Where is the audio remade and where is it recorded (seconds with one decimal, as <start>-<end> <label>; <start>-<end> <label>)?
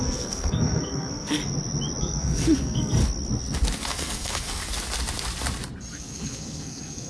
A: 0.0-1.4 remade; 1.4-2.0 recorded; 2.0-3.0 remade; 3.0-3.8 recorded; 3.8-4.6 remade; 4.6-5.9 recorded; 5.9-7.1 remade